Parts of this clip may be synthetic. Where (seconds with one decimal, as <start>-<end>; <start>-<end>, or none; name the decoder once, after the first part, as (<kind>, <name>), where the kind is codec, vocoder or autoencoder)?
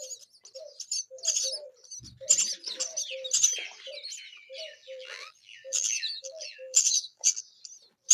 4.8-7.4 (vocoder, BigVGAN v2)